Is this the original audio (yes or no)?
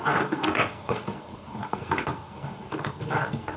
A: no